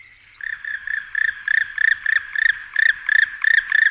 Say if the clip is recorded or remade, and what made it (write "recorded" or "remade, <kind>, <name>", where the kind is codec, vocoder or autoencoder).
recorded